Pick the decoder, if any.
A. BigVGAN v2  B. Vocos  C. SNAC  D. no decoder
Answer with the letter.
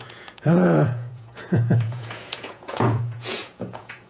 B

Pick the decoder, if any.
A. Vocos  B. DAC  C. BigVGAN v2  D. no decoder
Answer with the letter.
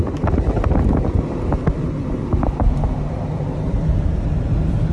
D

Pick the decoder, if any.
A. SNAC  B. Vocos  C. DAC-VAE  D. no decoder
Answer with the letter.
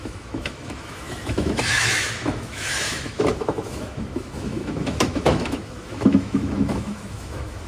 C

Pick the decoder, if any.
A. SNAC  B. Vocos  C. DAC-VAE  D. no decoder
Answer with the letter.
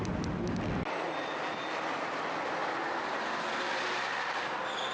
D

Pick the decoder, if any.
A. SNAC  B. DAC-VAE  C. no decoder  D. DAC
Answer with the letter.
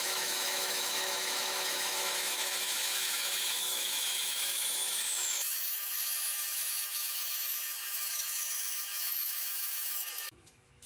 B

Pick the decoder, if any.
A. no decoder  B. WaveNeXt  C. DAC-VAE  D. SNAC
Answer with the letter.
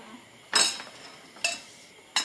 A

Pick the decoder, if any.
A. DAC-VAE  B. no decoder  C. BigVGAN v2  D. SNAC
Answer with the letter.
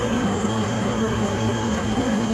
D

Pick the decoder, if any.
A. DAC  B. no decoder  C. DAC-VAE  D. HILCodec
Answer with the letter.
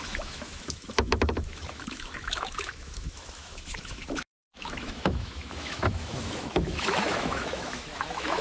C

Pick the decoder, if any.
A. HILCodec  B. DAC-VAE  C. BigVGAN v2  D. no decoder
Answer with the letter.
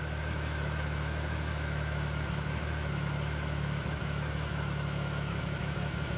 B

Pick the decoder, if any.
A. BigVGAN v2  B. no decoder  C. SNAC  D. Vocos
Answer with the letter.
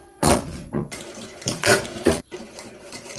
D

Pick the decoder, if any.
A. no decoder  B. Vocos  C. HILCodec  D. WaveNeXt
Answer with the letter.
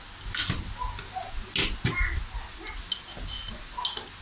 A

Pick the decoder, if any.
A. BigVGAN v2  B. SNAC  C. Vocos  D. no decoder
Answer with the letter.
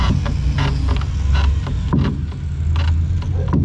D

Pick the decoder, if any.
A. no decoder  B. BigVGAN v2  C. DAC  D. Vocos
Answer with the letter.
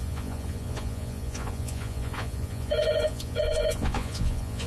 D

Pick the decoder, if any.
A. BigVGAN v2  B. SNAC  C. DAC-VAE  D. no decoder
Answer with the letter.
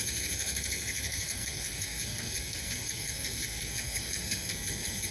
B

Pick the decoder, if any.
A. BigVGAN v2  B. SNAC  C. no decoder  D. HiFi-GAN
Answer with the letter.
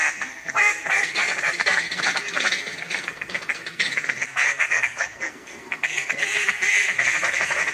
B